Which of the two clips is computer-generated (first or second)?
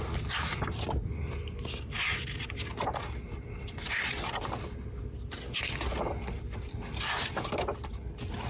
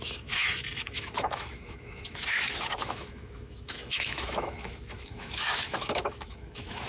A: second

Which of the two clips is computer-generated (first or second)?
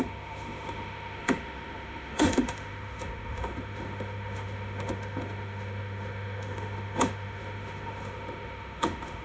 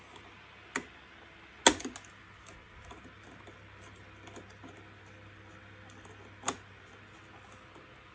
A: first